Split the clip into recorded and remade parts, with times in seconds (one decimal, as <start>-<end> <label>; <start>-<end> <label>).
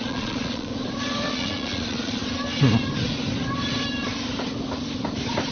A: 0.0-0.7 remade; 0.7-1.3 recorded; 1.3-2.2 remade; 2.2-5.5 recorded